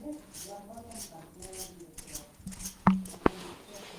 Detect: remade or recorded remade